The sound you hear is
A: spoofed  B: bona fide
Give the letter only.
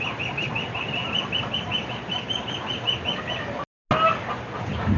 B